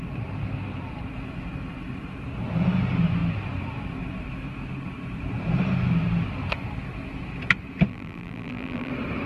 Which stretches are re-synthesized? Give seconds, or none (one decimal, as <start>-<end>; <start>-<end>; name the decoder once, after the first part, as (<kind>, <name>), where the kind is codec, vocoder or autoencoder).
7.9-8.9 (vocoder, BigVGAN v2)